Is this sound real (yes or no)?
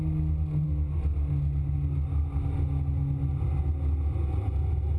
yes